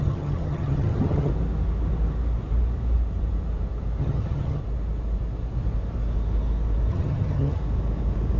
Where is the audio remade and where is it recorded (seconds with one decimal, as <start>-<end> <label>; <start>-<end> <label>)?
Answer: 0.0-1.3 remade; 1.3-4.0 recorded; 4.0-4.6 remade; 4.6-6.9 recorded; 6.9-7.6 remade; 7.6-8.4 recorded